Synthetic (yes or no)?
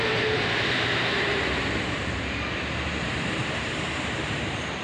yes